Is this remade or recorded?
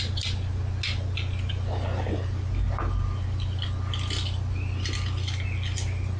recorded